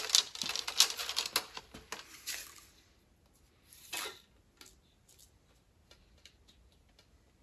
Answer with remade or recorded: recorded